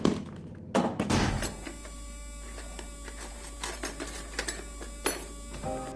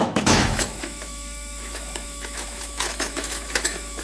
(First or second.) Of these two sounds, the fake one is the second